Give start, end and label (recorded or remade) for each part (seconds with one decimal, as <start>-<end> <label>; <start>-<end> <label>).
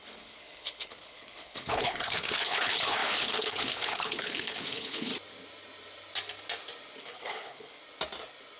0.0-5.1 remade; 5.1-7.0 recorded; 7.0-7.8 remade; 7.8-8.6 recorded